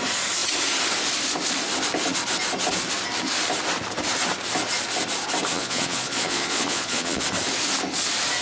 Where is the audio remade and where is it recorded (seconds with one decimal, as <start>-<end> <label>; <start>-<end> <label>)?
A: 0.0-5.5 recorded; 5.5-7.2 remade; 7.2-8.4 recorded